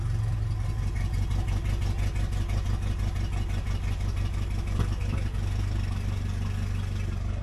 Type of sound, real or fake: real